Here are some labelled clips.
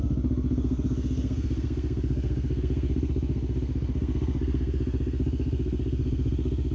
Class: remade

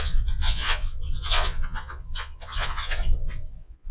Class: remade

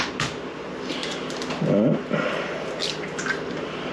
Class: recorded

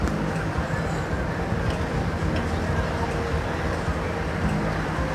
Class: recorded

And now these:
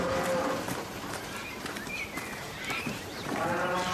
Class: remade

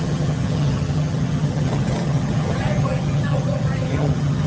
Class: remade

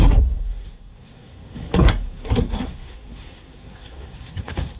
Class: remade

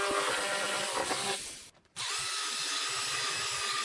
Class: recorded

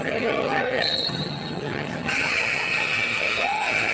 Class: remade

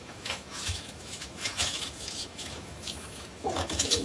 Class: remade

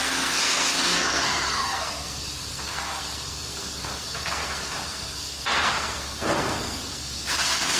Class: remade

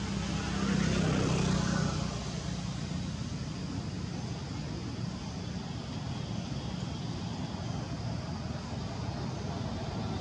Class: recorded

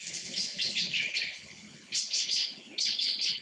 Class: remade